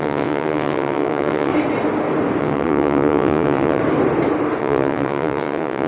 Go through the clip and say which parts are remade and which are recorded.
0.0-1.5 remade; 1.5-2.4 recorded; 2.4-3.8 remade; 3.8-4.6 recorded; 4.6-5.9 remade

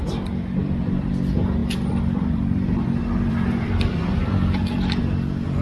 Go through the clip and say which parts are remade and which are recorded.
0.0-1.1 remade; 1.1-1.6 recorded; 1.6-5.0 remade; 5.0-5.6 recorded

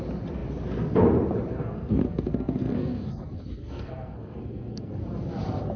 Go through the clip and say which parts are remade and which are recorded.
0.0-1.5 recorded; 1.5-5.0 remade; 5.0-5.8 recorded

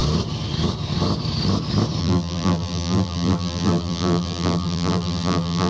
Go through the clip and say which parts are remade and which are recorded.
0.0-2.0 recorded; 2.0-5.7 remade

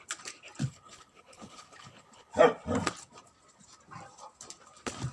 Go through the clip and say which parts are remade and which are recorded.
0.0-0.6 recorded; 0.6-2.3 remade; 2.3-5.1 recorded

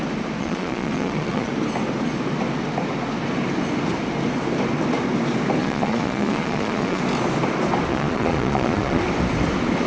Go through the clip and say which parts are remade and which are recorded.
0.0-0.4 recorded; 0.4-1.5 remade; 1.5-5.6 recorded; 5.6-7.0 remade; 7.0-7.9 recorded; 7.9-9.0 remade; 9.0-9.9 recorded

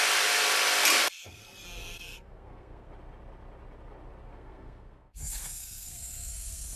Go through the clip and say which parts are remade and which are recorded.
0.0-1.0 recorded; 1.0-2.9 remade; 2.9-4.3 recorded; 4.3-6.8 remade